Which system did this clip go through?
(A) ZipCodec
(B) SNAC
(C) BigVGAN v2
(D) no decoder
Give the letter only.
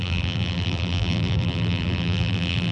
C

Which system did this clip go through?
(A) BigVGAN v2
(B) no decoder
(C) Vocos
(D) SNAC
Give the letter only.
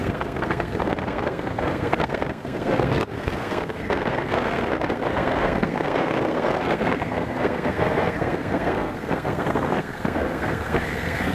D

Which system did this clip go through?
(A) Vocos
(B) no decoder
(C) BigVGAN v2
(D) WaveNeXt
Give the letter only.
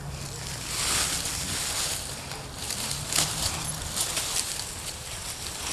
B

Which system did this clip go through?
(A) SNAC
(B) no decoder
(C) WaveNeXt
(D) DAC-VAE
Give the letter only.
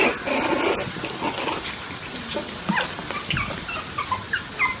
B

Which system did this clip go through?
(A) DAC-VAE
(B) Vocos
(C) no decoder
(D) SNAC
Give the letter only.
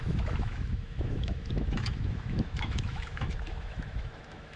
A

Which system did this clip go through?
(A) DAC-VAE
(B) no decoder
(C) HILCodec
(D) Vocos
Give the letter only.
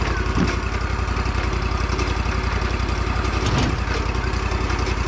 B